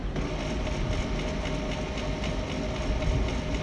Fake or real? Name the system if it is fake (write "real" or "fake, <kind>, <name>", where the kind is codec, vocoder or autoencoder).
real